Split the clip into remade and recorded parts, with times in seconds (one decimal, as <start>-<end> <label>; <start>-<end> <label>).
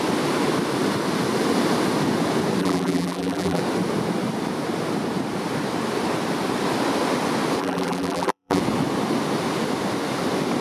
0.0-2.6 recorded; 2.6-3.6 remade; 3.6-7.6 recorded; 7.6-8.6 remade; 8.6-10.6 recorded